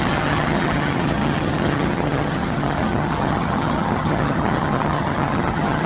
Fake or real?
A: fake